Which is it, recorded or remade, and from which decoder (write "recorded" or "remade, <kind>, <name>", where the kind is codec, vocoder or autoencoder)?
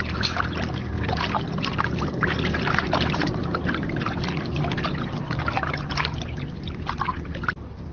recorded